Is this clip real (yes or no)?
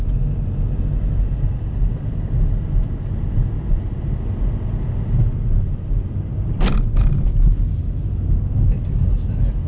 yes